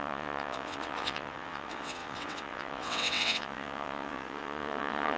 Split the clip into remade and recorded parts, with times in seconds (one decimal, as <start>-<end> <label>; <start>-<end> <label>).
0.0-5.2 remade